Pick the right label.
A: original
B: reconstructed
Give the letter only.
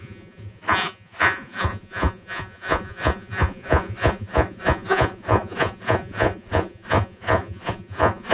B